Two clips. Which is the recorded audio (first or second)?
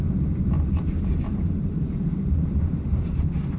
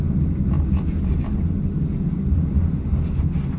second